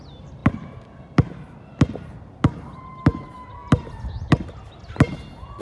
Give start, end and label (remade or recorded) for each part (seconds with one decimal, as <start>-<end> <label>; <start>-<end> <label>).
0.0-5.6 recorded